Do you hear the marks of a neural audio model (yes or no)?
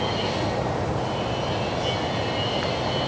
no